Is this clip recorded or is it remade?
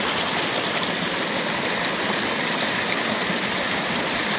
recorded